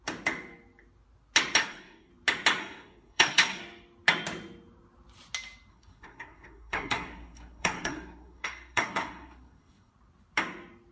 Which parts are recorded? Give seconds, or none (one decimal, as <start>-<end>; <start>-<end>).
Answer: 0.0-1.6; 2.1-2.6; 3.6-5.7; 9.9-10.9